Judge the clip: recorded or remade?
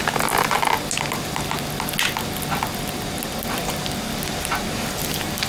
recorded